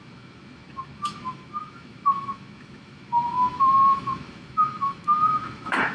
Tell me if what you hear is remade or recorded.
remade